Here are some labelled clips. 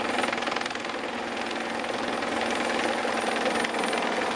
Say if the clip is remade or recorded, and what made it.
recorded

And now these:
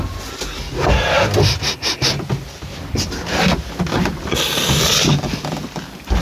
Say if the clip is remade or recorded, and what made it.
recorded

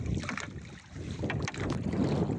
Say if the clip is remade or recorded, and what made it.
recorded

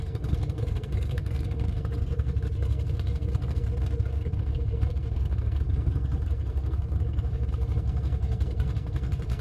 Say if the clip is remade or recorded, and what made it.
remade, codec, SNAC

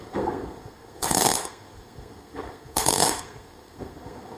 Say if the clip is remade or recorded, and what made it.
remade, codec, SNAC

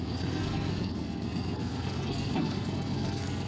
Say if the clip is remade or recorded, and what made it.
remade, codec, SNAC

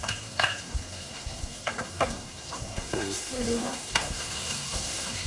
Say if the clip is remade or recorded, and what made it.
remade, codec, SNAC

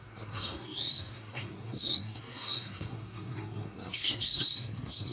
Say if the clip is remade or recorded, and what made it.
remade, codec, SNAC